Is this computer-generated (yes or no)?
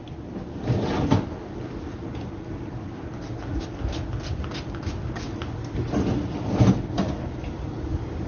no